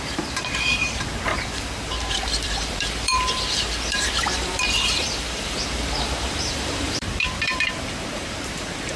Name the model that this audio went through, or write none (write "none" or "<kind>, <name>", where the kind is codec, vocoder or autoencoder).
vocoder, BigVGAN v2